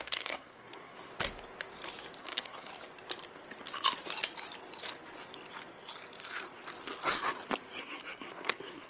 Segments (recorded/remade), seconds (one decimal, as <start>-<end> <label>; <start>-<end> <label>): 0.0-1.1 remade; 1.1-2.2 recorded; 2.2-2.7 remade; 2.7-7.8 recorded; 7.8-8.9 remade